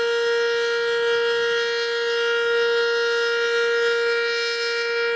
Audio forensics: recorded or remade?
recorded